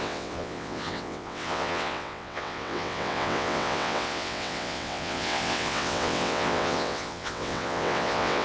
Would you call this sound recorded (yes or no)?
no